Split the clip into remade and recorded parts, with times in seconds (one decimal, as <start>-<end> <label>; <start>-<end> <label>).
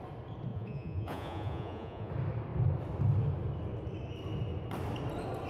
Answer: 0.0-0.5 recorded; 0.5-2.1 remade; 2.1-5.5 recorded